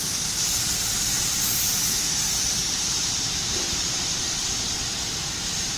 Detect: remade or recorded remade